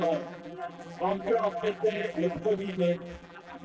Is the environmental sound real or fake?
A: fake